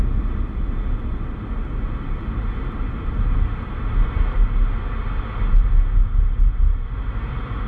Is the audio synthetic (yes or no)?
no